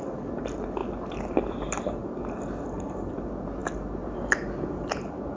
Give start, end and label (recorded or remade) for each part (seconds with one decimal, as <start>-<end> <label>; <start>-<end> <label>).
0.0-5.4 recorded